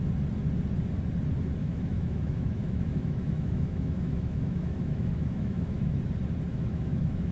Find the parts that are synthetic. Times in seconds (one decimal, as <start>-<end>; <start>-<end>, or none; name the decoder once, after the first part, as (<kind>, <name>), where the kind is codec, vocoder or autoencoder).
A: 1.6-6.0 (autoencoder, DAC-VAE); 6.5-7.3